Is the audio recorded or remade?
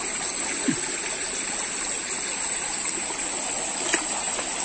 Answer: recorded